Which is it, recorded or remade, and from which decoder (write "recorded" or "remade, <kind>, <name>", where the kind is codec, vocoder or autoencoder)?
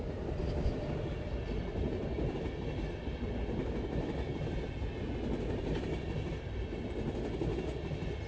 recorded